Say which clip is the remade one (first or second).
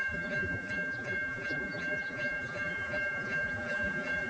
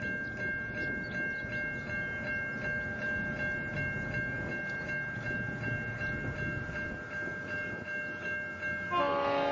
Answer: first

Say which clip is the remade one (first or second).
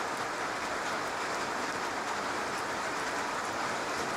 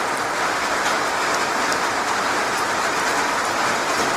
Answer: second